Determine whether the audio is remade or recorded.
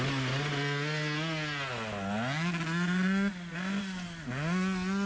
recorded